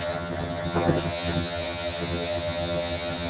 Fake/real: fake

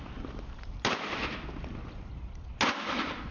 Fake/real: real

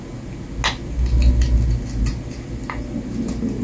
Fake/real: real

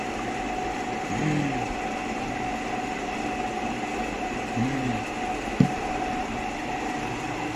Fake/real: real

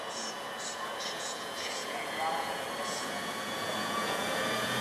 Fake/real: fake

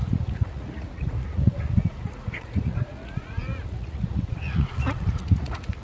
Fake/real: fake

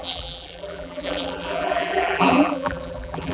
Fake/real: fake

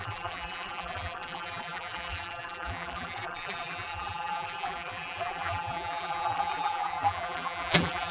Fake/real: fake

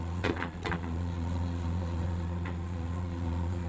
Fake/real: fake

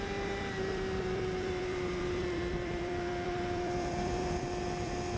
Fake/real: fake